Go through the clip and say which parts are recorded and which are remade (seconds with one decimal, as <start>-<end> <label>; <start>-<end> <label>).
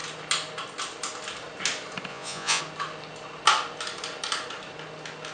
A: 0.0-2.1 recorded; 2.1-2.6 remade; 2.6-5.3 recorded